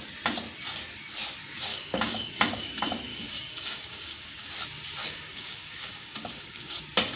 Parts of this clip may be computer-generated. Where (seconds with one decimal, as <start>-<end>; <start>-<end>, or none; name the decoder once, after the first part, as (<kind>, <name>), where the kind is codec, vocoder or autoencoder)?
1.7-2.3 (codec, DAC); 3.1-4.5; 5.0-6.8